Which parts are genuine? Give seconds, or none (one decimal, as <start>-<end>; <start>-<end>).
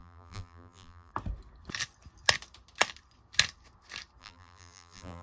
1.1-4.2